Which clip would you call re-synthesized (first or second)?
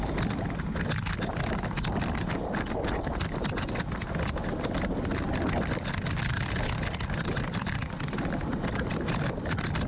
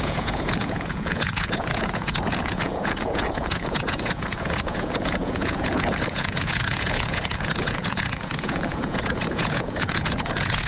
second